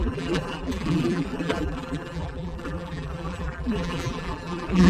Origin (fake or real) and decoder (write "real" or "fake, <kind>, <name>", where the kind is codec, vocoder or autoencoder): fake, vocoder, BigVGAN v2